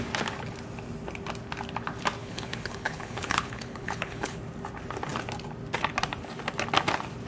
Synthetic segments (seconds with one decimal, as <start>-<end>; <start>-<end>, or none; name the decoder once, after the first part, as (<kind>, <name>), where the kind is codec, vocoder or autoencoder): 2.2-4.4 (codec, HILCodec)